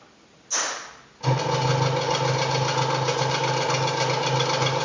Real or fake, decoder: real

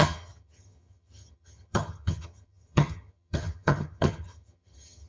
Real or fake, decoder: fake, vocoder, HiFi-GAN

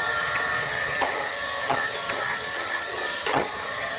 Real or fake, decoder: fake, vocoder, HiFi-GAN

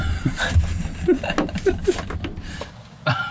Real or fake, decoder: real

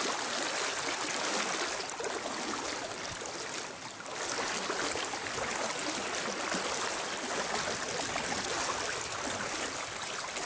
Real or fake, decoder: real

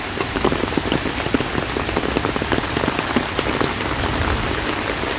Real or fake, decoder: real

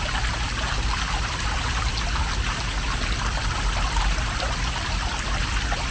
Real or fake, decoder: real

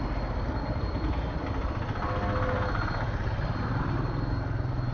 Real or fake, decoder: real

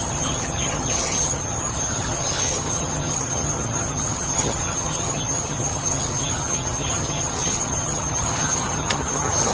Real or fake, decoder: fake, vocoder, HiFi-GAN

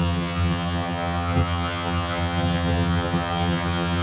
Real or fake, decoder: fake, vocoder, HiFi-GAN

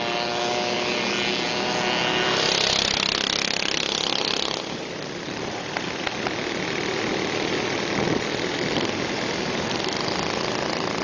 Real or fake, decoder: real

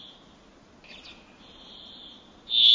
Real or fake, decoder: real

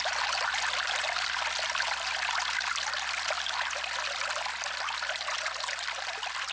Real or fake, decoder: real